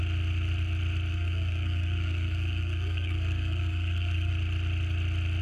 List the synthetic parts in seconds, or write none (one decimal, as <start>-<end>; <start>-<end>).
1.1-4.3